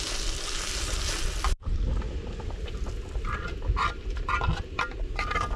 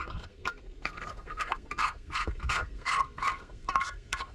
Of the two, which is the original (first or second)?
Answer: first